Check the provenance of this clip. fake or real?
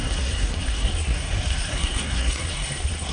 fake